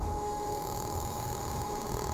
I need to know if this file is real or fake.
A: fake